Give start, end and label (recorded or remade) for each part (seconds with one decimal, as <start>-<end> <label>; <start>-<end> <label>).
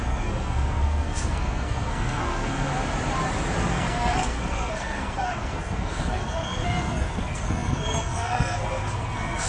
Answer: 0.0-2.7 remade; 2.7-3.7 recorded; 3.7-9.5 remade